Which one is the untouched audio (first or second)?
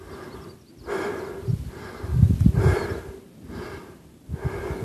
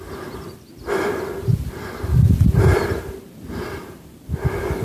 first